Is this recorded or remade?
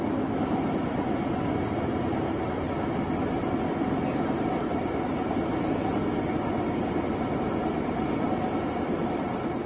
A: recorded